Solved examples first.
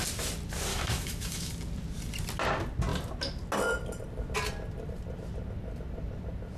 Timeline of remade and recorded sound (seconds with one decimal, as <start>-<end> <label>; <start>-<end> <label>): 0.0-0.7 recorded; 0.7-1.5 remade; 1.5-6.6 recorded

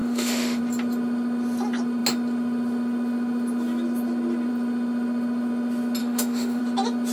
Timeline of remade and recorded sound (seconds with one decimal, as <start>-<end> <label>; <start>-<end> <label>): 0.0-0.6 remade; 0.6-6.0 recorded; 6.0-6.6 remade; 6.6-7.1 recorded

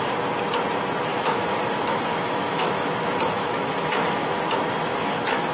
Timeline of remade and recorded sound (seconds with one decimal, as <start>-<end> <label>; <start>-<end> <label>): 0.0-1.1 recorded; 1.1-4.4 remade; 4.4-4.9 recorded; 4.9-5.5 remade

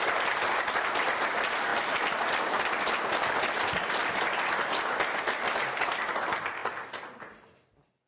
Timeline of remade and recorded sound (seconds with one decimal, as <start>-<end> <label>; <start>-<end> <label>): 0.0-8.1 recorded

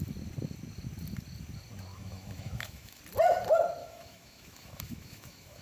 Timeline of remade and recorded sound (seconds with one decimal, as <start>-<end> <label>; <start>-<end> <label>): 0.0-1.9 recorded; 1.9-3.0 remade; 3.0-3.8 recorded; 3.8-5.6 remade